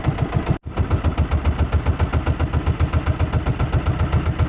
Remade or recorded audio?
recorded